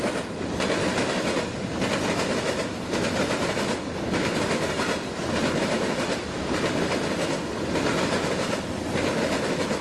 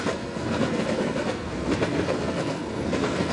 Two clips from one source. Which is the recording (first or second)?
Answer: first